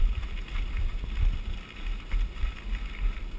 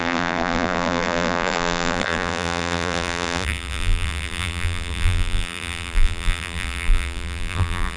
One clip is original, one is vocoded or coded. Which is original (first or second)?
first